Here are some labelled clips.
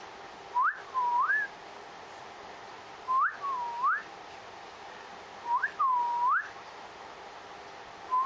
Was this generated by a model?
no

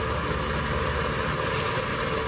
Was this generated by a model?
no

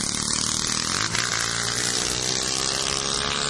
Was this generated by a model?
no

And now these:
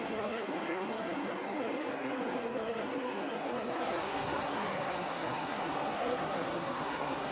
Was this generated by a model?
yes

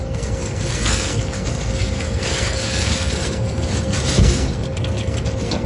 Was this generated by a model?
yes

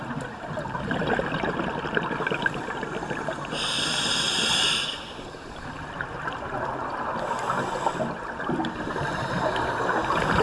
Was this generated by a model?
no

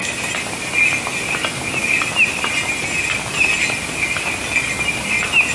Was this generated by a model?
no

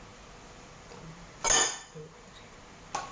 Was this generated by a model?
no